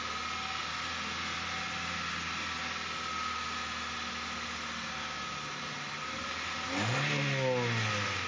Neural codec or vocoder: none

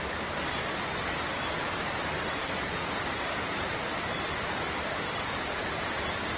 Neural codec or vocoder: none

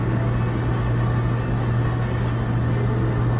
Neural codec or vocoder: none